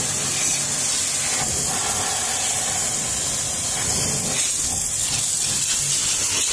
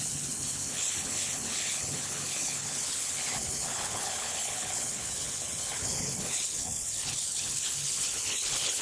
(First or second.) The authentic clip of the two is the first